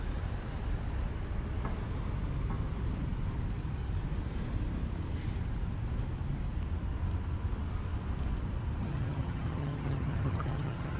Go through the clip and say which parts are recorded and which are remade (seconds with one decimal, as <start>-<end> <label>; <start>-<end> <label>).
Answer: 0.0-8.8 recorded; 8.8-11.0 remade